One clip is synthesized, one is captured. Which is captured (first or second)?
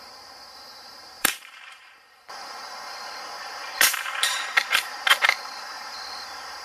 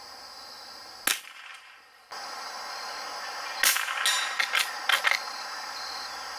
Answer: second